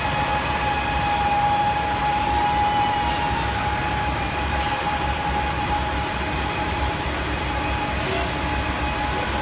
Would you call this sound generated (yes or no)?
no